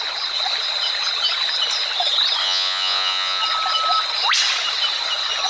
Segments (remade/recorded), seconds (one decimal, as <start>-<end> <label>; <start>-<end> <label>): 0.0-2.4 recorded; 2.4-3.4 remade; 3.4-5.5 recorded